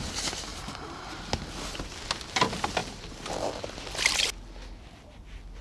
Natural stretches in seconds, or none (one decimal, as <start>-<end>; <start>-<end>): 0.0-0.5; 1.1-2.8; 3.3-5.6